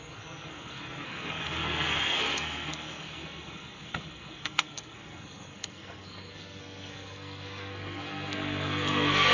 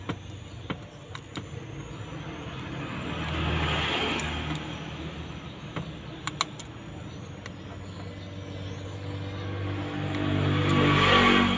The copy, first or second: first